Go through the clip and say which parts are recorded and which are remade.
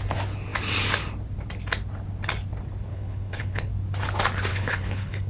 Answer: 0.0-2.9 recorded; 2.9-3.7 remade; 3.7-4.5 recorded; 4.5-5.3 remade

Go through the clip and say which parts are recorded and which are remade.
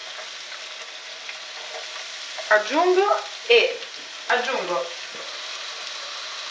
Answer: 0.0-6.5 recorded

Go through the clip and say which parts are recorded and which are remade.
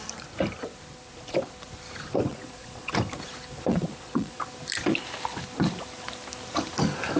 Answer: 0.0-2.3 recorded; 2.3-2.9 remade; 2.9-3.7 recorded; 3.7-4.4 remade; 4.4-7.2 recorded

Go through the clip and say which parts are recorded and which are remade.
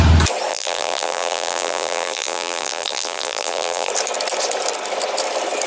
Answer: 0.0-0.5 recorded; 0.5-3.9 remade; 3.9-5.7 recorded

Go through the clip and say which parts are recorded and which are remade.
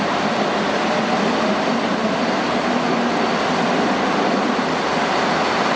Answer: 0.0-5.8 recorded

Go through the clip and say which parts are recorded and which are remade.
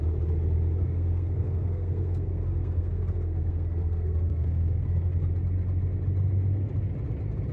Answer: 0.0-0.8 recorded; 0.8-5.3 remade; 5.3-7.5 recorded